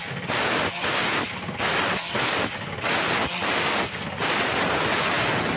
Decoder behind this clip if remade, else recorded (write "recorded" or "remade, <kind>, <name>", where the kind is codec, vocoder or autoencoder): recorded